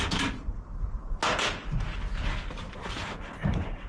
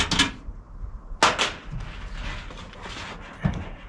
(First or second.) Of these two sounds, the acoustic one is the second